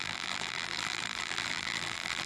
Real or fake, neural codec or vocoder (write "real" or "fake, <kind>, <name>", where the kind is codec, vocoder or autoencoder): fake, vocoder, BigVGAN v2